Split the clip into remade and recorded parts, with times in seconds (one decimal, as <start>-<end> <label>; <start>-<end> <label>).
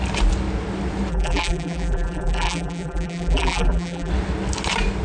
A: 0.0-1.1 recorded; 1.1-4.1 remade; 4.1-5.0 recorded